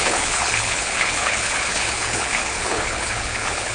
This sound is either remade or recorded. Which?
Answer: remade